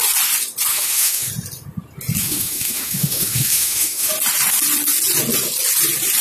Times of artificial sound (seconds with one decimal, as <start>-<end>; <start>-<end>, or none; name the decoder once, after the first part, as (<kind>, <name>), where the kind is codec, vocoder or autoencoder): 0.7-1.3 (autoencoder, DAC-VAE); 2.2-4.1